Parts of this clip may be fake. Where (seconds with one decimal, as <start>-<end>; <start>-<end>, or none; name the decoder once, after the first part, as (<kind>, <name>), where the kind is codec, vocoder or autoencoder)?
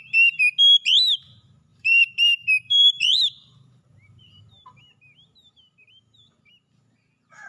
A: 1.7-4.4 (vocoder, BigVGAN v2)